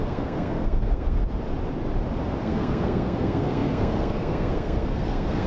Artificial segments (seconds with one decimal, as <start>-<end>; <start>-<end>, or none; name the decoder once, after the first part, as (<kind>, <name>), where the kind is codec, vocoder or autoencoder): 0.0-1.2 (codec, SNAC); 2.4-5.5

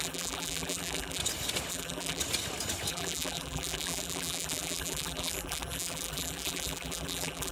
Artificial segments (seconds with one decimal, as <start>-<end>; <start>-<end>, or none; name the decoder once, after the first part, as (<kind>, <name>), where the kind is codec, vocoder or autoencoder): 0.0-1.2 (vocoder, BigVGAN v2); 1.7-2.2; 2.9-7.5

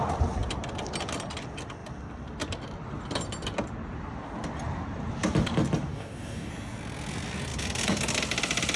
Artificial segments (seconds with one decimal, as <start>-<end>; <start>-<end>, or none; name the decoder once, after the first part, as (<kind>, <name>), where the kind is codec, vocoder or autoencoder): 5.9-6.5 (codec, DAC)

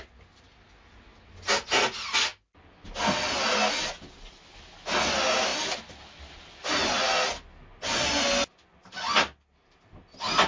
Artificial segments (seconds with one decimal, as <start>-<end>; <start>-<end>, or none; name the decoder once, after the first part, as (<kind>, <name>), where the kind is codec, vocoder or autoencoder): none

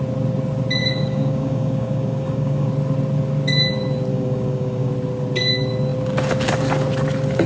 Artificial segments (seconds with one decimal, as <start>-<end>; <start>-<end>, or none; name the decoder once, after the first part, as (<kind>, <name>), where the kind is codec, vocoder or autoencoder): 0.8-2.7 (codec, DAC); 4.1-4.9

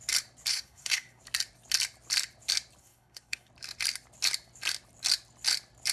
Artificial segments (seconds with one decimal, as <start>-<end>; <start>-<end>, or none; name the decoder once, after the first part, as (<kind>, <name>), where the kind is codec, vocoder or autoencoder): 0.5-1.2 (codec, SNAC); 2.8-3.5